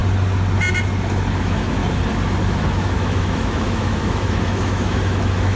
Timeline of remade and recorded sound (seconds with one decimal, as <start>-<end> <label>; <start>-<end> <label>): 0.0-1.4 recorded; 1.4-1.8 remade; 1.8-2.4 recorded; 2.4-5.6 remade